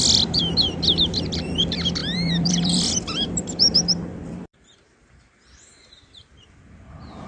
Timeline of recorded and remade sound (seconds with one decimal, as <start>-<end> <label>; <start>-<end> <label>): 0.0-7.3 remade